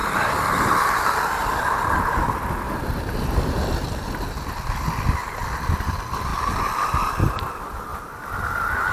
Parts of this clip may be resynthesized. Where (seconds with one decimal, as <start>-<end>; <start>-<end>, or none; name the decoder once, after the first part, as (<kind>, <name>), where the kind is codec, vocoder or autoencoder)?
0.0-0.6 (vocoder, BigVGAN v2)